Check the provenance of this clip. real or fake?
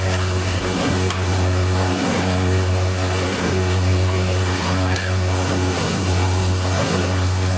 fake